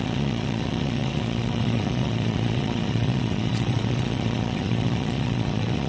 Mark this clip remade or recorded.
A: remade